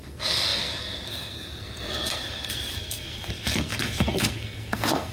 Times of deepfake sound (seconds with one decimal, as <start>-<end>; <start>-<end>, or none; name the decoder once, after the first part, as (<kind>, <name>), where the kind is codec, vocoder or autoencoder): 0.0-5.1 (codec, SNAC)